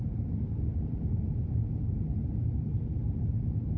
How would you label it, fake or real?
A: real